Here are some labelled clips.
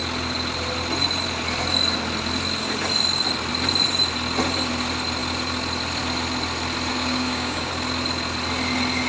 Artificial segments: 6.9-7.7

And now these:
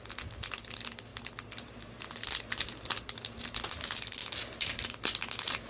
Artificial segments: none

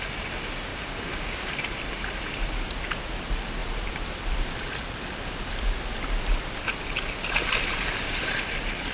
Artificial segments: 0.7-1.5

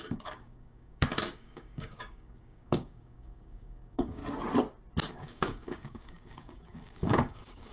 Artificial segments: 0.0-4.2; 5.1-7.7

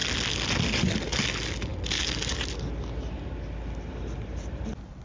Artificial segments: none

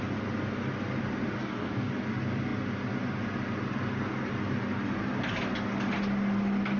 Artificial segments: 1.4-1.9